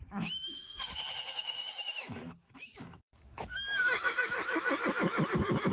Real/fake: fake